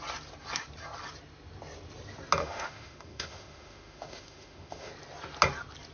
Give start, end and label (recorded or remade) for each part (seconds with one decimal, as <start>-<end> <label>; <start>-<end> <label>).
0.0-2.4 recorded; 2.4-4.9 remade; 4.9-5.9 recorded